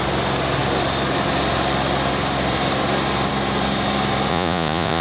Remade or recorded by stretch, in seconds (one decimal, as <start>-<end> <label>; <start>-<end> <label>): 0.0-4.3 recorded; 4.3-5.0 remade

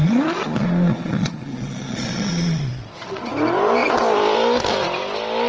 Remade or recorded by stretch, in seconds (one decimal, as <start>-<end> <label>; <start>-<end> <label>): 0.0-3.3 remade; 3.3-5.5 recorded